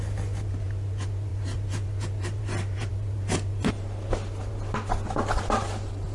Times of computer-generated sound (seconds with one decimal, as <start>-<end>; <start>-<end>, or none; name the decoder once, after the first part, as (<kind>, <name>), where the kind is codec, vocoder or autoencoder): none